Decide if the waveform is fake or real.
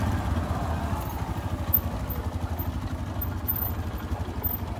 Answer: real